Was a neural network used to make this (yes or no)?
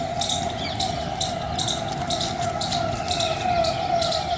no